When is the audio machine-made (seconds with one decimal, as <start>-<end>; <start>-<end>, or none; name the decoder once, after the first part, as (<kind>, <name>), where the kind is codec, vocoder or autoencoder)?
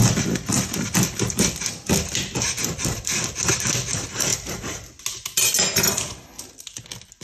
0.0-1.4 (vocoder, BigVGAN v2); 2.6-3.2; 4.3-5.0